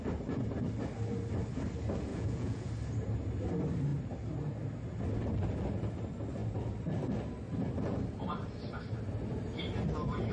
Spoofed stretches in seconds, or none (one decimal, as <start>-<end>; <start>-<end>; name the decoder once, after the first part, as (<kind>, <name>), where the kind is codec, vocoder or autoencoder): 2.1-2.7 (vocoder, Vocos)